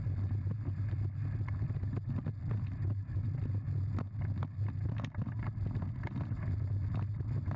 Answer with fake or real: real